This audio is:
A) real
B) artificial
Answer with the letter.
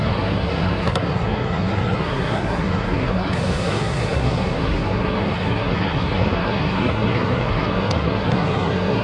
B